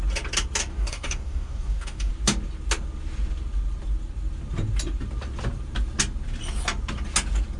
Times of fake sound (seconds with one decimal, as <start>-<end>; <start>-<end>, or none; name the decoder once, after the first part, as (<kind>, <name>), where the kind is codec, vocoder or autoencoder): 0.6-2.1 (codec, DAC)